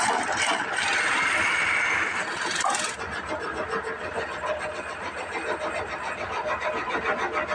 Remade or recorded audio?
recorded